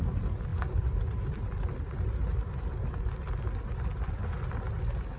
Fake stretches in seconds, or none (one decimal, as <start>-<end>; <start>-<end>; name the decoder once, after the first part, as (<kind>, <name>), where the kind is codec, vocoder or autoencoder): none